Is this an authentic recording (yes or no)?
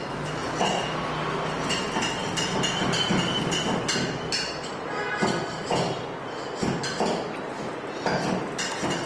yes